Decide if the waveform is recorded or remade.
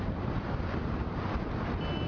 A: recorded